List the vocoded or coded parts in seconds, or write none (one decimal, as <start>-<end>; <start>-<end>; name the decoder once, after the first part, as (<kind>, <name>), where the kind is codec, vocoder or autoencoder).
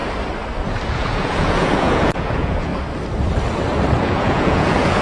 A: 0.9-2.7 (vocoder, Vocos); 4.0-5.0